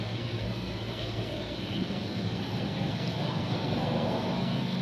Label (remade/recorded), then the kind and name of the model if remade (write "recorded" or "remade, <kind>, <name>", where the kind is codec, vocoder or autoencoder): remade, codec, SNAC